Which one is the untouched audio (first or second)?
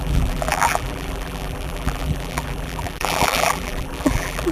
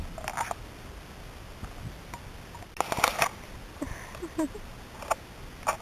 second